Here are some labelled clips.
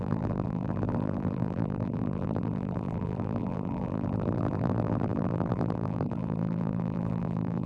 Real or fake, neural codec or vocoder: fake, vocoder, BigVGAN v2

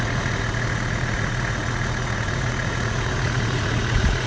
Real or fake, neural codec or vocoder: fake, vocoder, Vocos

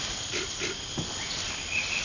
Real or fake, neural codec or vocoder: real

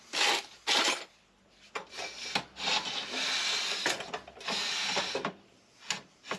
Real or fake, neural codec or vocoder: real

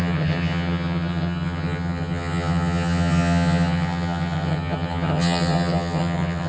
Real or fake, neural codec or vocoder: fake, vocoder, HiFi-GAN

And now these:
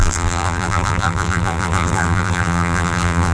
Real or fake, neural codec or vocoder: fake, vocoder, BigVGAN v2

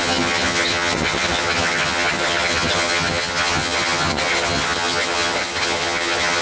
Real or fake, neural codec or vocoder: fake, vocoder, HiFi-GAN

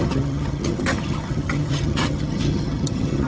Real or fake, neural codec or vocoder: fake, vocoder, HiFi-GAN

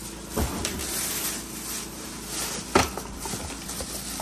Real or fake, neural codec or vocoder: real